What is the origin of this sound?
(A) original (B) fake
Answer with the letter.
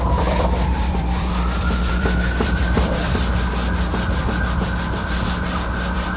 B